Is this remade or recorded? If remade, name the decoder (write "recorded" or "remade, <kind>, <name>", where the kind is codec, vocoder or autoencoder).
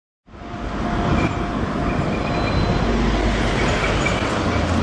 recorded